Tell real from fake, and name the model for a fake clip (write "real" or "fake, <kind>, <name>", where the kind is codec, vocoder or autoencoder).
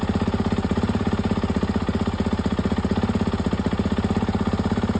real